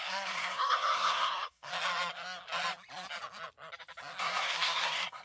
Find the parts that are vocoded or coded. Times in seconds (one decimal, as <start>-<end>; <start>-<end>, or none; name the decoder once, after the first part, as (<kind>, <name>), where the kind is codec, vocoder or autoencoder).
0.0-1.7 (codec, SNAC); 4.2-5.2